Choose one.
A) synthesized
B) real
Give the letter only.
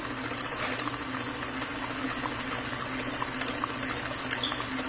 B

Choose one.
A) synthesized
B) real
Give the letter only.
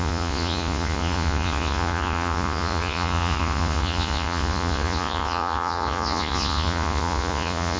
A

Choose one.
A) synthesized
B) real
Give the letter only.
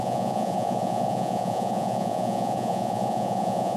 A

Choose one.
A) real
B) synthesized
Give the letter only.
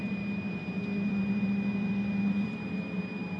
B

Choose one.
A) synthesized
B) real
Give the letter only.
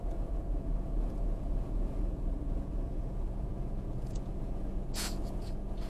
A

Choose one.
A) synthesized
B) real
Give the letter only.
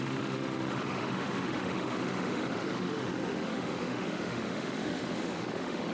A